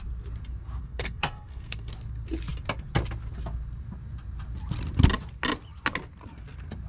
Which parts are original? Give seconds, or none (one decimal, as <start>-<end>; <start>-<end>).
0.0-0.8; 1.9-6.9